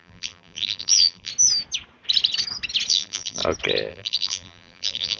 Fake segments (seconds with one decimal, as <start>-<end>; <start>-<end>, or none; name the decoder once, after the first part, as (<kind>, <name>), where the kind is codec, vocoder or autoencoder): 0.0-1.3 (vocoder, BigVGAN v2); 2.9-3.4; 3.9-5.2